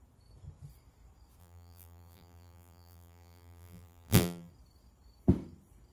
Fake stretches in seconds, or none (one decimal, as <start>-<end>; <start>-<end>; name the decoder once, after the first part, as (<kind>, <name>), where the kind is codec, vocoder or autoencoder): 1.4-4.5 (vocoder, BigVGAN v2)